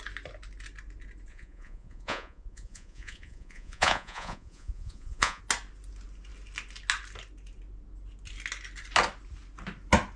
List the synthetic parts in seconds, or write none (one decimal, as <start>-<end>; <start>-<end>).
1.3-5.4